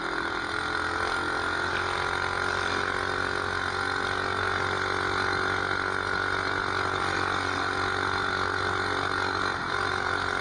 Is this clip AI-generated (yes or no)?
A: no